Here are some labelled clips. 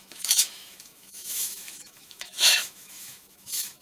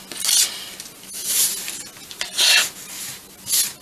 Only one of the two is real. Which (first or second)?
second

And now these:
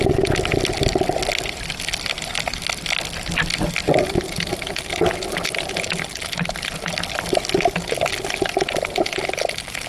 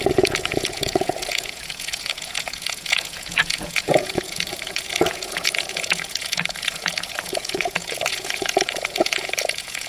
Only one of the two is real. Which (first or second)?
first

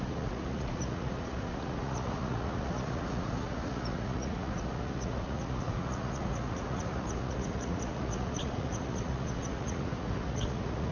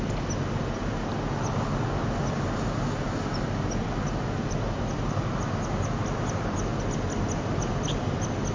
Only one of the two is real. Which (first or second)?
second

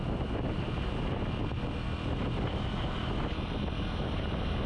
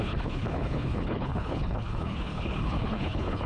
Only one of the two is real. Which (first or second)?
first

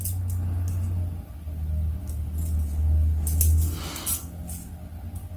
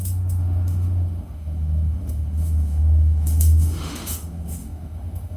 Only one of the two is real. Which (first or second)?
first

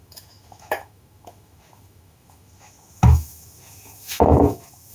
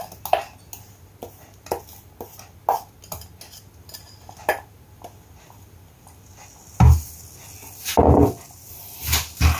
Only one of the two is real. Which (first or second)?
second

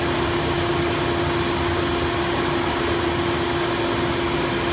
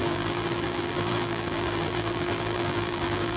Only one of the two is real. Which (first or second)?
first